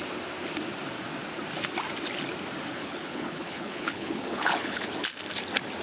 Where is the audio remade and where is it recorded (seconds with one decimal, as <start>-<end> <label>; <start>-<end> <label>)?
0.0-2.7 recorded; 2.7-4.9 remade; 4.9-5.8 recorded